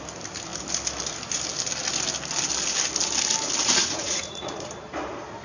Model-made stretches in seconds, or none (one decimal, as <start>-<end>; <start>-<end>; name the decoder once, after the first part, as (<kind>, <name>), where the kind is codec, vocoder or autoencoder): 3.8-4.7 (vocoder, Vocos)